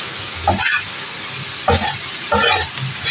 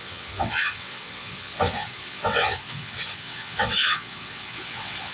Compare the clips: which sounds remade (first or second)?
second